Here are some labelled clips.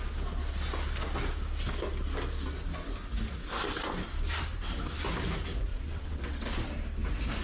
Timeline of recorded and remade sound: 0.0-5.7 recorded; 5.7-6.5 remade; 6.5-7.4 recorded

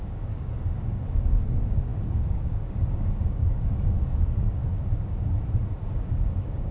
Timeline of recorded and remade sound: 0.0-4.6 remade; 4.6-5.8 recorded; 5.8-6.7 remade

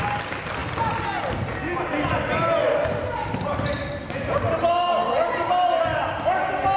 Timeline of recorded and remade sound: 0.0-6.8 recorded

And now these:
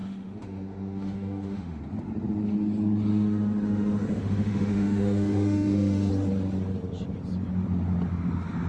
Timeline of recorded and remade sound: 0.0-1.8 remade; 1.8-3.1 recorded; 3.1-6.1 remade; 6.1-8.7 recorded